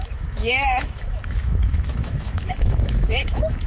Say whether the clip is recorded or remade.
remade